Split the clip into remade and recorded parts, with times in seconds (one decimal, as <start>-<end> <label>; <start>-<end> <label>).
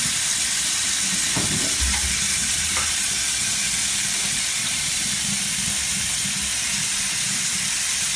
0.0-8.2 recorded